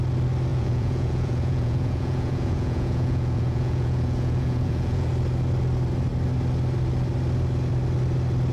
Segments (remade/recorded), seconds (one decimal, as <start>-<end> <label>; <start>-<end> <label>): 0.0-0.5 recorded; 0.5-5.1 remade; 5.1-8.5 recorded